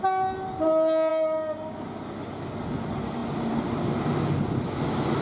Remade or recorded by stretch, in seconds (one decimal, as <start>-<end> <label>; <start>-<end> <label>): 0.0-5.2 recorded